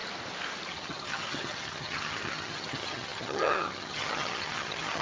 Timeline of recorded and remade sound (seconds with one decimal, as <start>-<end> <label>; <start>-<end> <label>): 0.0-0.7 recorded; 0.7-5.0 remade

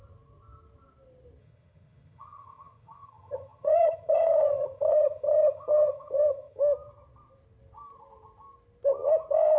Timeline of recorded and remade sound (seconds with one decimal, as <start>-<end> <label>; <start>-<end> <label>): 0.0-1.4 recorded; 1.4-6.6 remade; 6.6-9.6 recorded

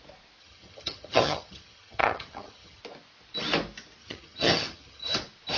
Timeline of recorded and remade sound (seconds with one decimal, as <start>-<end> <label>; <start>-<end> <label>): 0.0-0.4 recorded; 0.4-2.8 remade; 2.8-4.0 recorded; 4.0-5.1 remade; 5.1-5.6 recorded

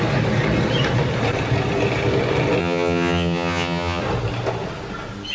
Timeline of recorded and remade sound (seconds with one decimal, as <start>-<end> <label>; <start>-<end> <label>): 0.0-2.6 recorded; 2.6-4.0 remade; 4.0-5.3 recorded